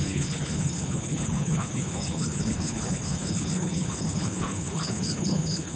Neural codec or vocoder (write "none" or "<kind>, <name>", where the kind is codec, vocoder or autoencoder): codec, HILCodec